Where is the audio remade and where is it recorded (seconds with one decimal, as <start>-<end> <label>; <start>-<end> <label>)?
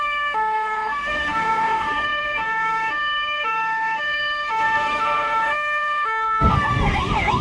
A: 0.0-7.4 remade